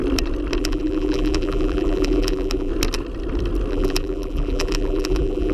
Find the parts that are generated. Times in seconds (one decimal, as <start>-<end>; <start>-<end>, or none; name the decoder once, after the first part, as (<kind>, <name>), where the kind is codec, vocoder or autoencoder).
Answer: 0.6-2.7 (vocoder, BigVGAN v2); 3.7-5.5